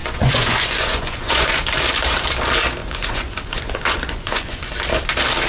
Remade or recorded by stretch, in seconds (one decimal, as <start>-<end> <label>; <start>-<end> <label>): 0.0-1.5 remade; 1.5-2.8 recorded; 2.8-4.7 remade; 4.7-5.5 recorded